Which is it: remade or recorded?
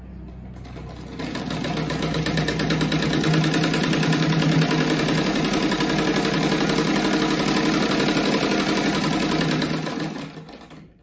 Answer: recorded